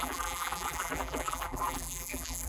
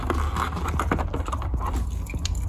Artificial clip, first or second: first